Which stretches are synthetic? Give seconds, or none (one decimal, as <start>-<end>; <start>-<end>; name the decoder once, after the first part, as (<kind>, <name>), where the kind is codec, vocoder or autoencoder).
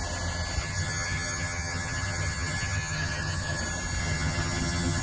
0.6-3.6 (vocoder, HiFi-GAN); 4.0-5.0